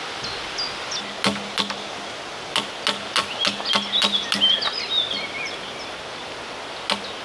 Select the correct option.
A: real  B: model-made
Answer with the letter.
A